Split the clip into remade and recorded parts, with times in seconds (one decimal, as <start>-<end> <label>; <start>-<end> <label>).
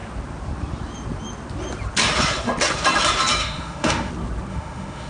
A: 0.0-3.4 recorded; 3.4-4.1 remade; 4.1-4.5 recorded; 4.5-5.1 remade